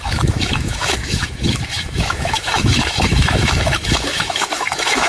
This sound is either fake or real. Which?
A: fake